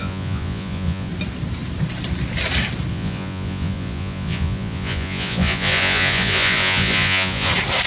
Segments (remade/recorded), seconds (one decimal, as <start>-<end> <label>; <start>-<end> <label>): 0.0-1.1 remade; 1.1-2.9 recorded; 2.9-7.5 remade; 7.5-7.9 recorded